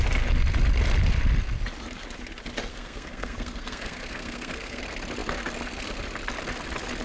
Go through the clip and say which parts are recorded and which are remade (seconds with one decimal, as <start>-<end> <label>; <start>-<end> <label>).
0.0-2.7 recorded; 2.7-4.8 remade; 4.8-7.0 recorded

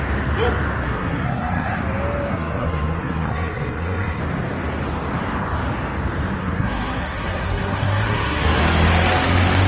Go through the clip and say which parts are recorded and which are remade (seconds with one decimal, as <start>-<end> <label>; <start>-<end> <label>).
0.0-0.8 recorded; 0.8-1.8 remade; 1.8-2.3 recorded; 2.3-4.2 remade; 4.2-6.4 recorded; 6.4-8.6 remade; 8.6-9.7 recorded

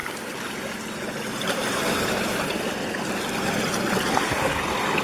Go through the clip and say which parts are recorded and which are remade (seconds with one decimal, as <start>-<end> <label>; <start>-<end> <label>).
0.0-0.5 remade; 0.5-1.8 recorded; 1.8-3.7 remade; 3.7-5.0 recorded

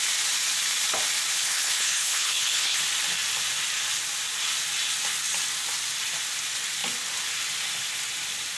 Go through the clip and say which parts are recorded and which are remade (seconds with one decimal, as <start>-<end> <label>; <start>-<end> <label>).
0.0-1.3 recorded; 1.3-2.8 remade; 2.8-8.6 recorded